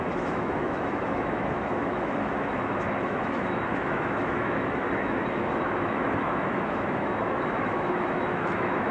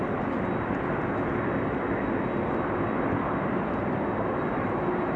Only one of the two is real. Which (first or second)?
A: second